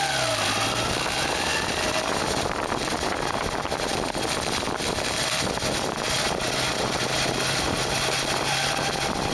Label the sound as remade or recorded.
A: recorded